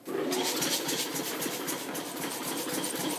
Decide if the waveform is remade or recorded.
remade